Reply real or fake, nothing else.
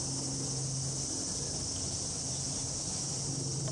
real